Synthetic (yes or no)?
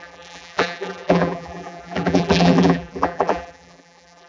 yes